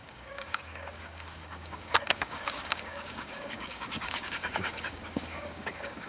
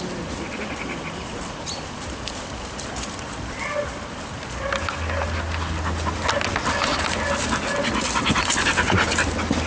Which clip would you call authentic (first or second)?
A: second